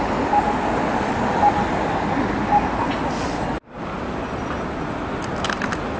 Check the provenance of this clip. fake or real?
real